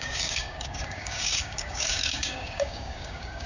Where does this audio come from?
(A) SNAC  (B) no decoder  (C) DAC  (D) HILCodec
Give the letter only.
C